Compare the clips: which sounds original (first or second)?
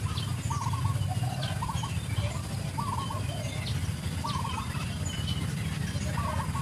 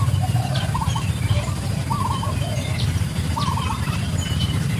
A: first